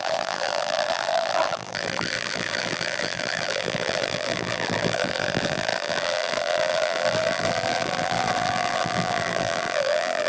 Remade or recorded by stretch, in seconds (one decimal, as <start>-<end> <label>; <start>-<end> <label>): 0.0-10.3 remade